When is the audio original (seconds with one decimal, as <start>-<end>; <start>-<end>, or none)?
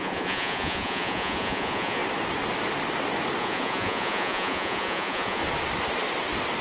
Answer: 2.0-3.4; 5.4-6.6